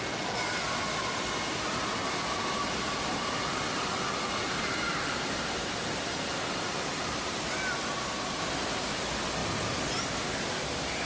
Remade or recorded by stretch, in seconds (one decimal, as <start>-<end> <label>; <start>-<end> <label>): 0.0-11.1 recorded